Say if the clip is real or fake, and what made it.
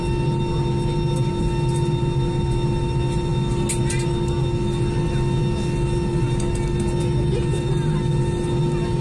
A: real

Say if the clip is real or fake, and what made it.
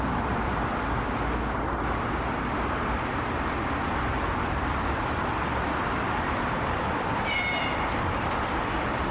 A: real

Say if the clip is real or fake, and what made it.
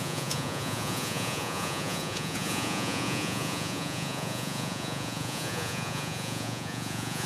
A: fake, vocoder, Vocos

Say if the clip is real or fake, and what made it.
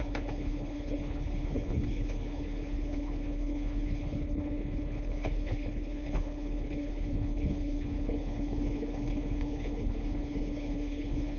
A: fake, codec, HILCodec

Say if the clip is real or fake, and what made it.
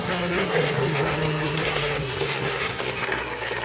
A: fake, codec, SNAC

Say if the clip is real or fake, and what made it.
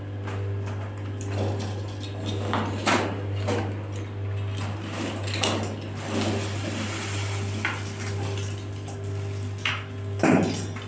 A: real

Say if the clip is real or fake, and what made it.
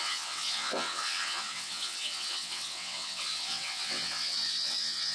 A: fake, vocoder, WaveNeXt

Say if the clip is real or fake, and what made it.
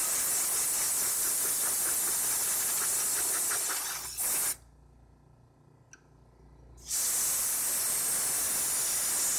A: real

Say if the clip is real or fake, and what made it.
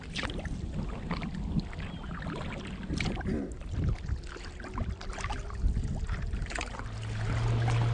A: real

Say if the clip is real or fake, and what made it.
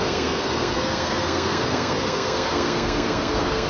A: fake, codec, SNAC